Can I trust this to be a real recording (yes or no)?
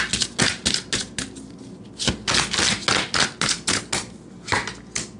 yes